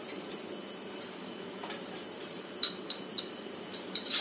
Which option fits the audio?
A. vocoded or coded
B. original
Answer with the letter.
A